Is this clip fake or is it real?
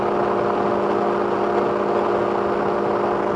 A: real